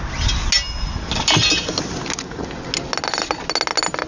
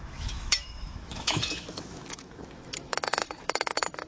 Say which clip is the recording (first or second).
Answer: first